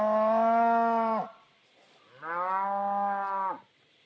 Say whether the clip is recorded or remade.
recorded